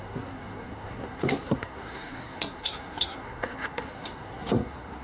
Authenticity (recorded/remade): remade